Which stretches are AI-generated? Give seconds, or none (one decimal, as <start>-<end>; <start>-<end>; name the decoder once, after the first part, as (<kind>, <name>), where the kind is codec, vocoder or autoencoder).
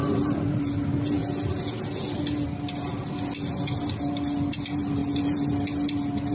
0.0-0.6 (vocoder, BigVGAN v2)